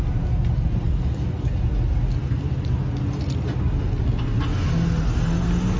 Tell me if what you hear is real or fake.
real